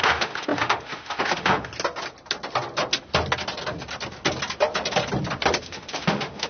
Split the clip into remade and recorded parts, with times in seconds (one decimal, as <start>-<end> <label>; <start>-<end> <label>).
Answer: 0.0-1.7 remade; 1.7-5.6 recorded; 5.6-6.5 remade